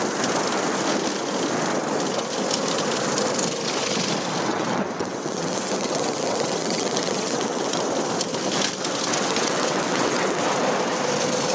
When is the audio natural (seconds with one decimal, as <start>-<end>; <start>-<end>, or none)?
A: 0.0-4.5; 7.8-9.1; 10.4-11.5